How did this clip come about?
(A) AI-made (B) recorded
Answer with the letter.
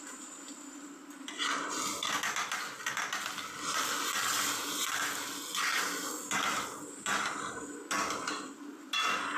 B